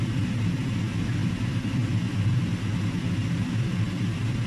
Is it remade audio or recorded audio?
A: recorded